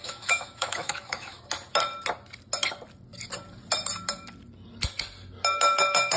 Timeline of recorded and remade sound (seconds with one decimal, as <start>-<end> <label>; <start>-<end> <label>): 0.0-1.4 remade; 1.4-6.2 recorded